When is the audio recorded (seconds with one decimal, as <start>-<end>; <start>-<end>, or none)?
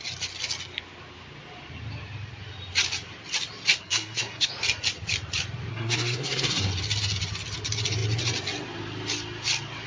0.0-3.8; 4.5-5.7; 6.7-9.9